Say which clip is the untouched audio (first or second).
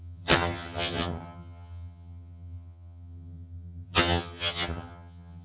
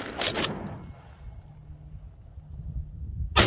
second